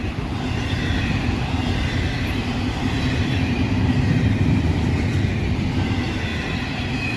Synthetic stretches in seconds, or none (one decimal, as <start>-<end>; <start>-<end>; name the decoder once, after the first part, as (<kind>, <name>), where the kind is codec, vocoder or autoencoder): none

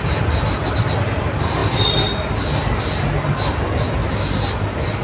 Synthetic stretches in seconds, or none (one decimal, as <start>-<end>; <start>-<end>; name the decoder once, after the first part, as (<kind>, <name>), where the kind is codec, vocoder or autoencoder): none

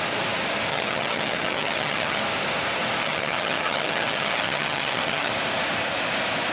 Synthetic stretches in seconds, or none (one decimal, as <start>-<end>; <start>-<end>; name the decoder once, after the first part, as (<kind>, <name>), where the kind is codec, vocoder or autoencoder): 0.7-2.2 (vocoder, HiFi-GAN); 3.0-5.3

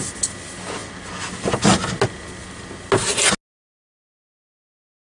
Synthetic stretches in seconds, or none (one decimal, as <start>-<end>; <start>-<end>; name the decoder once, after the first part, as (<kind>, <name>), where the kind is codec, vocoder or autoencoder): none

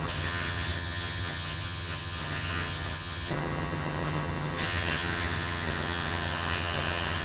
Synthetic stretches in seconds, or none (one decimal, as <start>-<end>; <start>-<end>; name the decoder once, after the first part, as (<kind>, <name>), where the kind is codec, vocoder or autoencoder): 0.0-7.2 (vocoder, HiFi-GAN)

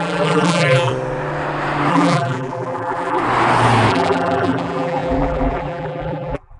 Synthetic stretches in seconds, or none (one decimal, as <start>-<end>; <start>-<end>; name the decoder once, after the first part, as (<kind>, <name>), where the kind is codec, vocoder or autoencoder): 0.0-0.9 (vocoder, BigVGAN v2); 1.9-3.2; 3.9-6.6